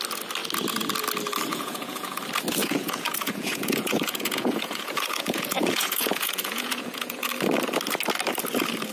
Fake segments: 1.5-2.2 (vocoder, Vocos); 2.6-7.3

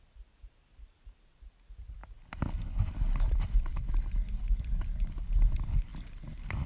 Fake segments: none

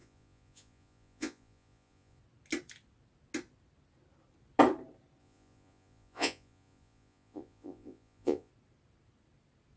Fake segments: 0.0-2.2 (vocoder, Vocos); 5.2-8.5

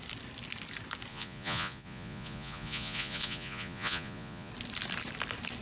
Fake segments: 1.1-4.5 (vocoder, Vocos)